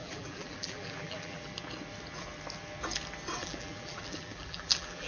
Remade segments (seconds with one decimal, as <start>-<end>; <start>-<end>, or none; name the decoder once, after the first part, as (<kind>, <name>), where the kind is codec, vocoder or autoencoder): 0.0-1.5 (vocoder, BigVGAN v2); 3.4-5.1